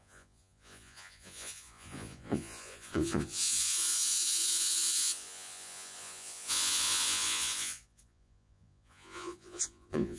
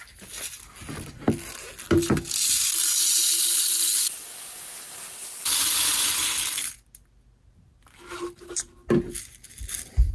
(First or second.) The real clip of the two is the second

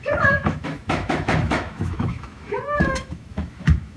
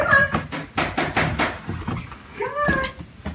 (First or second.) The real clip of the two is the second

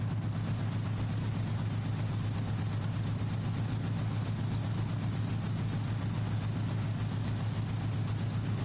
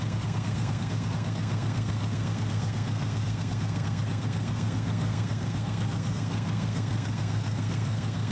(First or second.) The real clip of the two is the first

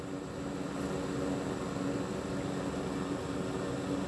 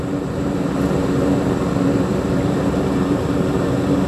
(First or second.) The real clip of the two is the first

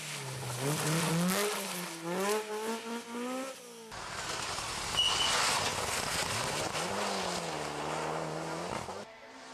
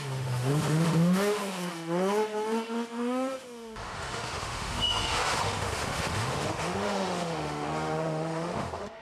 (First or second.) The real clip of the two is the first